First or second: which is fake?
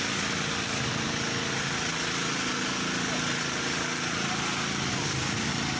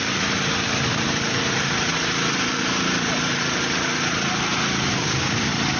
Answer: second